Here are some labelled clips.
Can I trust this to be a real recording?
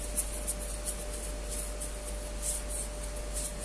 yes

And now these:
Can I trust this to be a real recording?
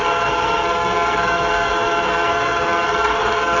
no